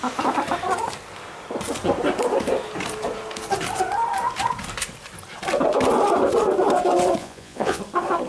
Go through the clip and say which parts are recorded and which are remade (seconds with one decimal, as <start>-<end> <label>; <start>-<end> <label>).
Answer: 0.0-7.2 recorded; 7.2-7.8 remade; 7.8-8.3 recorded